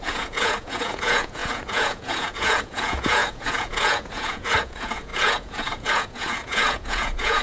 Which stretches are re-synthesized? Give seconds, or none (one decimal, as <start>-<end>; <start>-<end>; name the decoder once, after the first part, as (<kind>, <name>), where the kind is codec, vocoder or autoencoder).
0.0-7.4 (vocoder, Vocos)